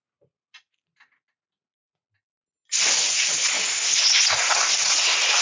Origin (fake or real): real